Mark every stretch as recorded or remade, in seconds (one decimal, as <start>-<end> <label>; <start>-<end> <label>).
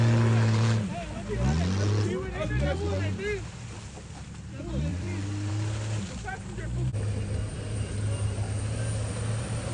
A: 0.0-4.9 recorded; 4.9-5.5 remade; 5.5-9.7 recorded